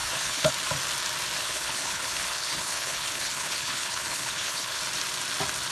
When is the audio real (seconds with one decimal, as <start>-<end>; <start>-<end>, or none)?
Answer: 0.5-1.4; 4.8-5.7